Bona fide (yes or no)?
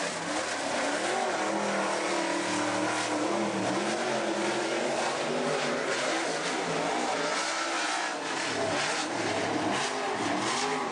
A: yes